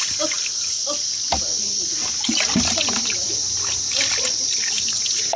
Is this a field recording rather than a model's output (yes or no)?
yes